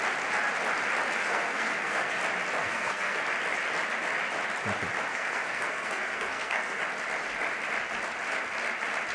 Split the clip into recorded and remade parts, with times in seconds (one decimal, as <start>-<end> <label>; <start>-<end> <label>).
0.0-1.2 recorded; 1.2-2.2 remade; 2.2-2.6 recorded; 2.6-3.2 remade; 3.2-5.1 recorded; 5.1-6.8 remade; 6.8-9.1 recorded